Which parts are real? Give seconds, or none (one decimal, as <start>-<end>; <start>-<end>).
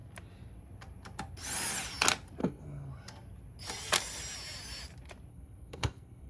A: 0.0-2.4; 2.9-5.3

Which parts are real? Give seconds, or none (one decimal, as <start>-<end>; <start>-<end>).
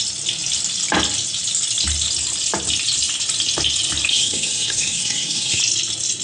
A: 0.0-4.1; 5.6-6.2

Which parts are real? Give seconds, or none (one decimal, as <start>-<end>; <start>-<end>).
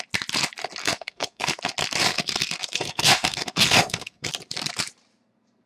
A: 0.0-0.8; 1.6-2.1; 4.3-5.7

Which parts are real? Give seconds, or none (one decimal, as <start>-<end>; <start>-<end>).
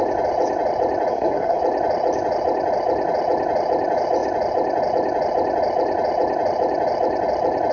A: 0.0-1.1; 1.6-7.7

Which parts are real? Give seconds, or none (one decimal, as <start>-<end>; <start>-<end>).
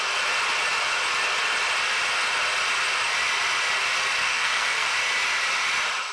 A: 0.0-4.2; 4.9-6.1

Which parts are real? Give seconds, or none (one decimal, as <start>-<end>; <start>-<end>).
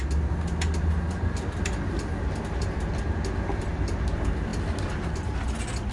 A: 0.0-5.9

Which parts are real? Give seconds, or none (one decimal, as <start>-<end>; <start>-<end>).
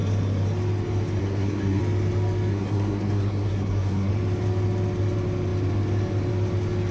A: 0.0-1.2; 1.8-2.5; 4.1-6.9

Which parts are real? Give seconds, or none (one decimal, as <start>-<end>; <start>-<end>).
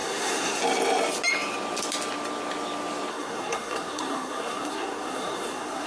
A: 0.6-3.1